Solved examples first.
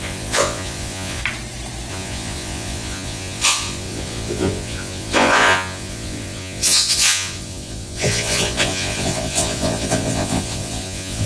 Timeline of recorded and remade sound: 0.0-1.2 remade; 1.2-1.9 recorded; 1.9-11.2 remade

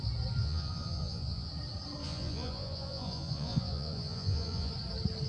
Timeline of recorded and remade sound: 0.0-0.4 recorded; 0.4-1.5 remade; 1.5-2.0 recorded; 2.0-4.7 remade; 4.7-5.3 recorded

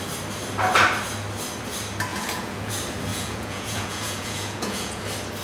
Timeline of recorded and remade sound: 0.0-2.1 recorded; 2.1-2.7 remade; 2.7-3.1 recorded; 3.1-5.0 remade; 5.0-5.4 recorded

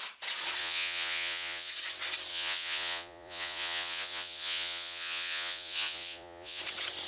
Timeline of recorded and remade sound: 0.0-0.6 recorded; 0.6-1.7 remade; 1.7-2.3 recorded; 2.3-6.6 remade; 6.6-7.1 recorded